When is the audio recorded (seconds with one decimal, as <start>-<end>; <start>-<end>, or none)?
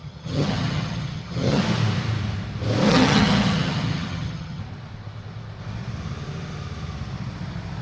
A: 1.6-2.9; 4.6-7.8